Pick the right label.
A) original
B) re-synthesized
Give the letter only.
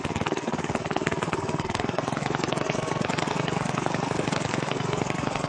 B